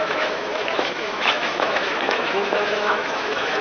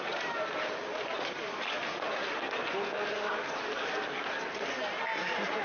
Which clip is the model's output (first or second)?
first